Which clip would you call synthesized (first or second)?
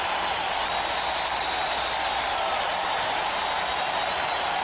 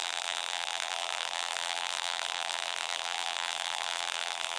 second